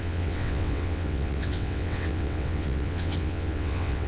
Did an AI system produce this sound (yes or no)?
yes